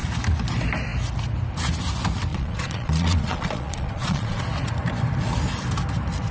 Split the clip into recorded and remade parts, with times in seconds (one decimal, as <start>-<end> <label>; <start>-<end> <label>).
0.0-2.3 recorded; 2.3-4.4 remade; 4.4-6.3 recorded